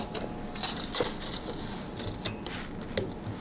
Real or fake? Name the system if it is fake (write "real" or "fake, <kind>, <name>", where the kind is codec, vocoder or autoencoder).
real